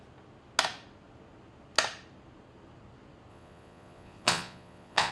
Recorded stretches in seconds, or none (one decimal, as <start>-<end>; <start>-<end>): 0.0-3.3